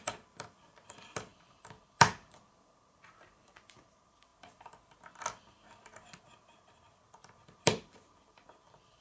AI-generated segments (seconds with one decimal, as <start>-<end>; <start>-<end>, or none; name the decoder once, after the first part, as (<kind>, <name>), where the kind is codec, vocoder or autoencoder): 0.0-4.3 (vocoder, BigVGAN v2); 6.2-9.0